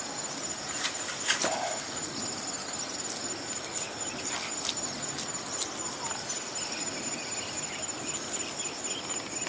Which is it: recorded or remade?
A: recorded